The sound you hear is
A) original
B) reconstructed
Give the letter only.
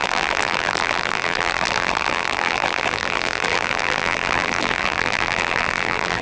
B